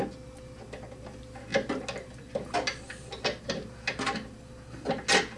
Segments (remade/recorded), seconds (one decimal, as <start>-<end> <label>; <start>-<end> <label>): 0.0-5.4 recorded